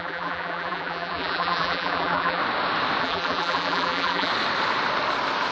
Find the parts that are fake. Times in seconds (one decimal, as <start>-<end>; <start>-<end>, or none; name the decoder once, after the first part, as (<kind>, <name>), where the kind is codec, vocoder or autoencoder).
0.0-2.4 (vocoder, BigVGAN v2); 3.0-4.3